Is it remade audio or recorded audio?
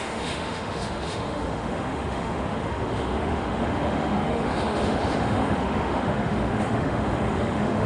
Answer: remade